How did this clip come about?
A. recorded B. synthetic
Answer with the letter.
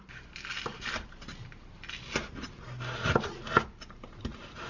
A